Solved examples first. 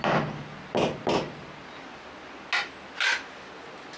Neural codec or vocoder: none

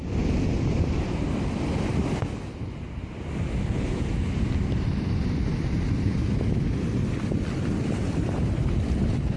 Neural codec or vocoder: none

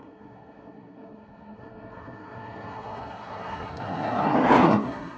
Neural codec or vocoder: codec, SNAC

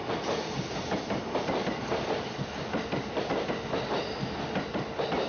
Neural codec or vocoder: none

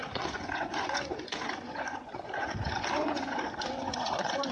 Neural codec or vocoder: vocoder, Vocos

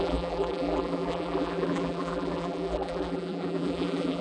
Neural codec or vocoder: vocoder, BigVGAN v2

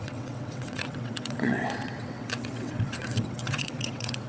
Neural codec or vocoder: vocoder, WaveNeXt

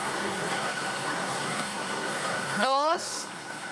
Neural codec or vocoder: codec, SNAC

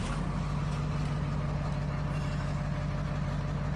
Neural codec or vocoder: none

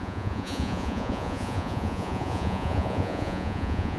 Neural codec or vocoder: vocoder, Vocos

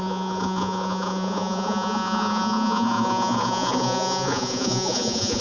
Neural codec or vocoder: vocoder, Vocos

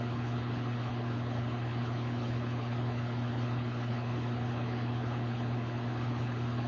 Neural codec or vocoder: codec, HILCodec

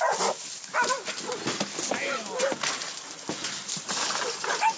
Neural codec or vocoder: none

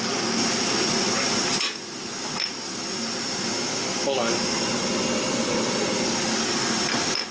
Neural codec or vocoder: none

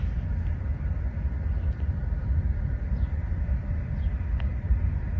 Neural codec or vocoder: vocoder, BigVGAN v2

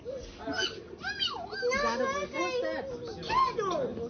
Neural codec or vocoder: none